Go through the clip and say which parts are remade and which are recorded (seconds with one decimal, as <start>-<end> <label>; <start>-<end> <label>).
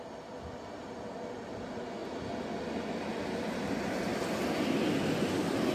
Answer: 0.0-5.7 recorded